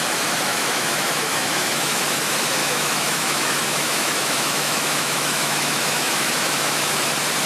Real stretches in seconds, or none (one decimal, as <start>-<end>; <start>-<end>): 0.0-0.5; 2.0-2.6; 7.1-7.5